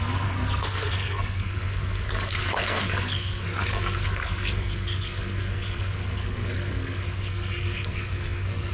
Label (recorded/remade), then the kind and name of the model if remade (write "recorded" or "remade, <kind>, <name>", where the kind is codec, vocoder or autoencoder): remade, codec, SNAC